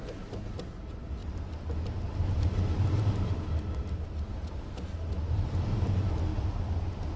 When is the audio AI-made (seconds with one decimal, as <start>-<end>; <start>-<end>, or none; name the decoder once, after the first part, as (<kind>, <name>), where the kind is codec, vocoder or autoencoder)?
none